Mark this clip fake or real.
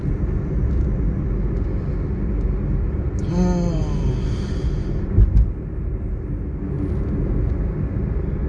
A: real